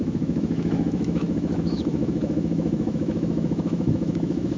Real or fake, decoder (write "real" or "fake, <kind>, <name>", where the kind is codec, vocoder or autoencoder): fake, autoencoder, DAC-VAE